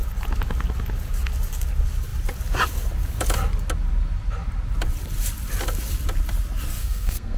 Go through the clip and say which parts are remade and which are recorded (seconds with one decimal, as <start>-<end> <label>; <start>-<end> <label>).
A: 0.0-6.8 recorded; 6.8-7.4 remade